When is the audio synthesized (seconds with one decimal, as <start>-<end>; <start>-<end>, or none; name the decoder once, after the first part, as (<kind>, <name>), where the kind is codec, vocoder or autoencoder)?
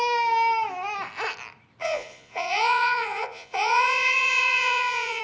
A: 1.8-5.2 (vocoder, Vocos)